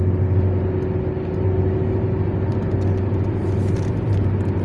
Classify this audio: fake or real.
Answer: real